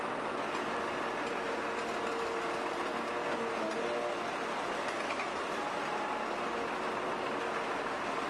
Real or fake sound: real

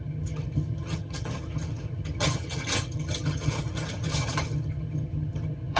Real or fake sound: fake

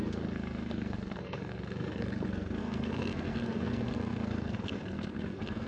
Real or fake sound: fake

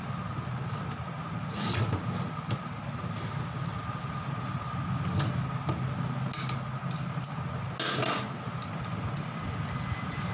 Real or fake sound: real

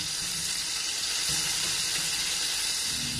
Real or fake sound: real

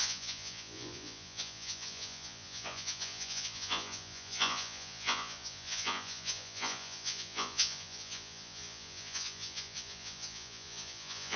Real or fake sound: fake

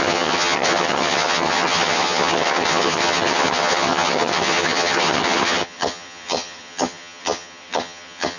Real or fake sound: fake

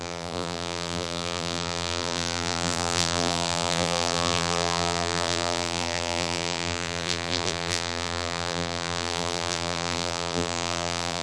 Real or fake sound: fake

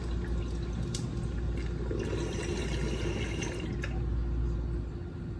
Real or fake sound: real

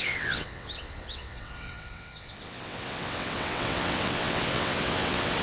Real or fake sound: fake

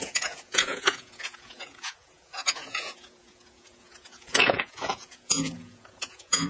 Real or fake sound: fake